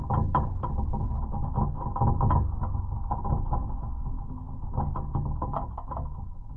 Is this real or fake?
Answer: real